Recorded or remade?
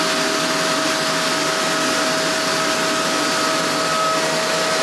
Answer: recorded